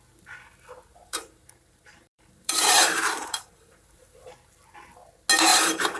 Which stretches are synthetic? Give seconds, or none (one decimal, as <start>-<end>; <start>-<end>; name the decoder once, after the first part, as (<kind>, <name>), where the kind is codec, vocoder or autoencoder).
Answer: 0.9-4.3 (vocoder, BigVGAN v2); 5.5-6.0